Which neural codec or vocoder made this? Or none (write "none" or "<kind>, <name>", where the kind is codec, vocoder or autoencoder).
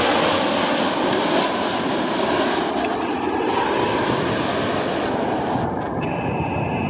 none